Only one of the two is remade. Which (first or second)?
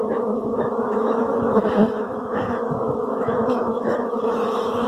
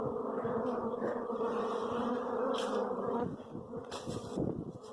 first